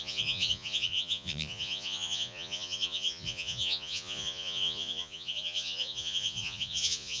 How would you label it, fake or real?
fake